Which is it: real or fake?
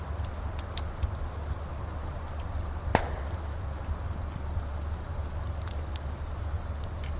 real